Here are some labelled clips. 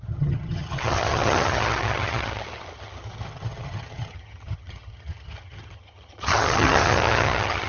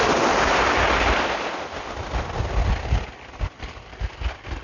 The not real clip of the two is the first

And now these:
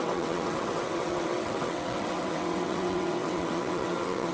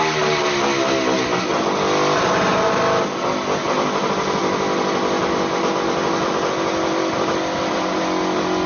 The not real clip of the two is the first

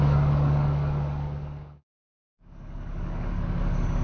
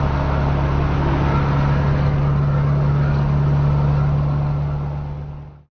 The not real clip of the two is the first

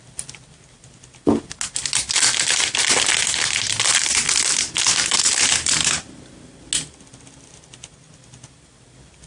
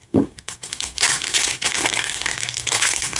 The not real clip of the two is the second